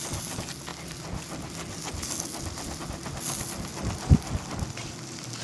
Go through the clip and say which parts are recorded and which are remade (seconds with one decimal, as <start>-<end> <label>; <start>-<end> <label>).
0.0-5.4 recorded

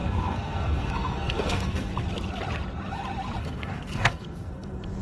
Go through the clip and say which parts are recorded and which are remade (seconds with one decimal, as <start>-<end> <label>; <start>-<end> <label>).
0.0-1.9 remade; 1.9-3.4 recorded; 3.4-5.0 remade

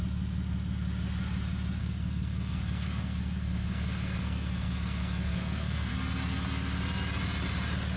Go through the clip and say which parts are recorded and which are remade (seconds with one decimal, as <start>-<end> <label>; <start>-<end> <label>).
0.0-1.8 recorded; 1.8-5.9 remade; 5.9-8.0 recorded

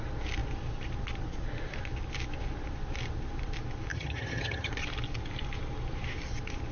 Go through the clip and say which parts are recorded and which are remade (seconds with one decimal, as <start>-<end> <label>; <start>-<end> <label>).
0.0-3.9 recorded; 3.9-4.7 remade; 4.7-6.7 recorded

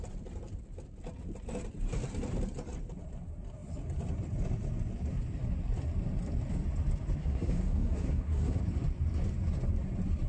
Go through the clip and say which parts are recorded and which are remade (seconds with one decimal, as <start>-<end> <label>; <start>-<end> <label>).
0.0-7.2 recorded; 7.2-8.6 remade; 8.6-10.3 recorded